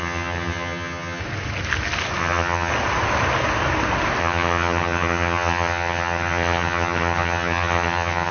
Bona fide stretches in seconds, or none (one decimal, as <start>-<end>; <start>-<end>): 1.2-2.2; 2.7-4.2